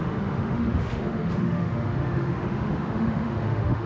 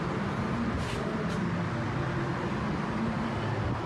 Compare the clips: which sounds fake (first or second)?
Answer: first